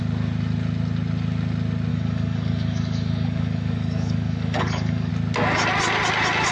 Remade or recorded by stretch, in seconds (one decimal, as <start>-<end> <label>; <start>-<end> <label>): 0.0-1.9 recorded; 1.9-5.1 remade; 5.1-6.5 recorded